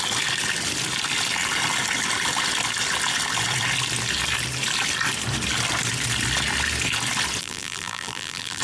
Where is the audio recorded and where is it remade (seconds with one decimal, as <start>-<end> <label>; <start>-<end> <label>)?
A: 0.0-7.4 recorded; 7.4-8.6 remade